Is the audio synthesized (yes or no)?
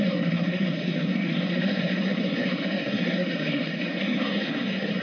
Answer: yes